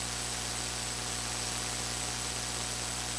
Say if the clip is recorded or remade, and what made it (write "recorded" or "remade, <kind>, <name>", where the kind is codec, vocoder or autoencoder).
recorded